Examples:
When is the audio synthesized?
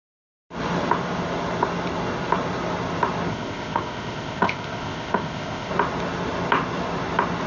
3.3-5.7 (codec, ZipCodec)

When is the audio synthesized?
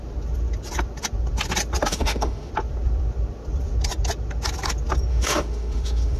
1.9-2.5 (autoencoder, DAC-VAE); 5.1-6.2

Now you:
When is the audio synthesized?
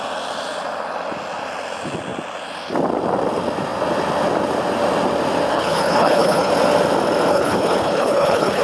5.5-6.5 (codec, HILCodec); 7.3-8.6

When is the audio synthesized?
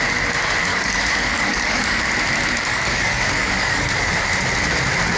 0.7-2.0 (codec, DAC); 2.7-4.1